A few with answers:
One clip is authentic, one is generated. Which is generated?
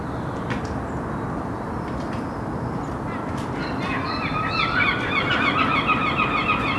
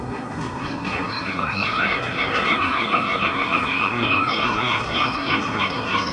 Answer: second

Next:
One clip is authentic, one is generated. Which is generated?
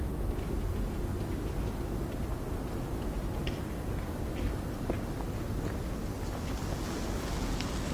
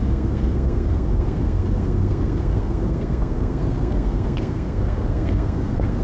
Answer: second